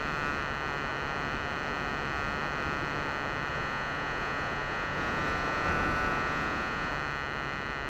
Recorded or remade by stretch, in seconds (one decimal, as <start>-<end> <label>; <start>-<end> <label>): 0.0-3.5 recorded; 3.5-6.9 remade; 6.9-7.9 recorded